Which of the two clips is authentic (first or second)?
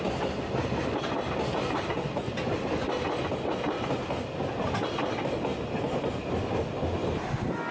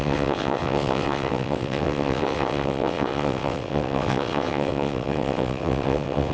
first